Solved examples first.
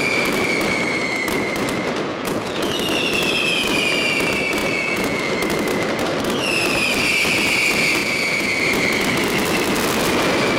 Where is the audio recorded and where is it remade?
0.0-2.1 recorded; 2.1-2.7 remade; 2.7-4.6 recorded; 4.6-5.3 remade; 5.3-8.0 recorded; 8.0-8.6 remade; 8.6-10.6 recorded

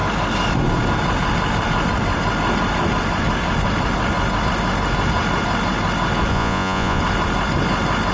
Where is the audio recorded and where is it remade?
0.0-6.3 recorded; 6.3-7.0 remade; 7.0-8.1 recorded

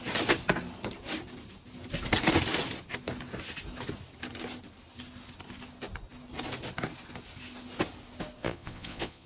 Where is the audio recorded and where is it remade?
0.0-8.4 recorded; 8.4-9.3 remade